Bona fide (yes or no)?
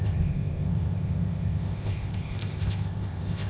no